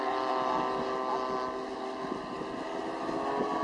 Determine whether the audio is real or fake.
real